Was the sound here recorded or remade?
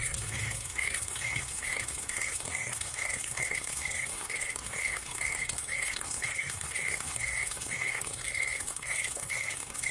remade